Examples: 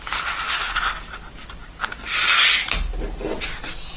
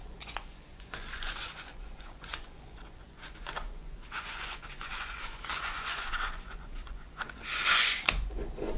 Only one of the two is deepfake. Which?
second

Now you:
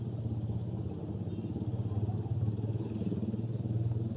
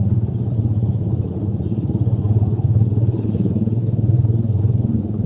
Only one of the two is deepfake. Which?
second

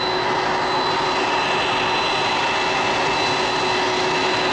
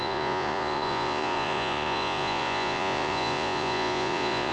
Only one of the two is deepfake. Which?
second